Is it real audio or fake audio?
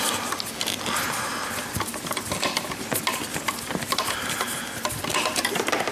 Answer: real